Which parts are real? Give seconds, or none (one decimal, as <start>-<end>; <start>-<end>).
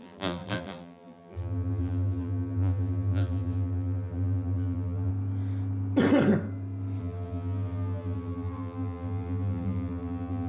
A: 5.1-7.0